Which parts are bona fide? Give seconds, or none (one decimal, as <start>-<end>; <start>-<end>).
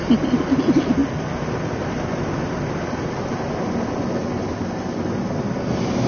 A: 0.0-6.1